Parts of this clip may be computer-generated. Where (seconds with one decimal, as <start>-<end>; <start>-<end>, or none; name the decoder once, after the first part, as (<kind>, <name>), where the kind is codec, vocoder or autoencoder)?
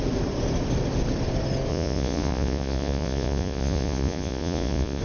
1.7-5.0 (vocoder, Vocos)